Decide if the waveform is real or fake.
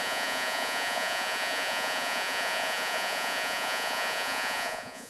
fake